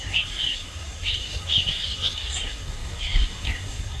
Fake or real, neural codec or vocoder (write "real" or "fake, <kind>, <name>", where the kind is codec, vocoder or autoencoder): fake, codec, SNAC